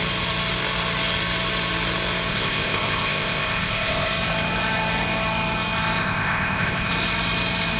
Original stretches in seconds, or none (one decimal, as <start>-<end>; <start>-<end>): 0.0-2.3; 4.1-6.0; 6.9-7.8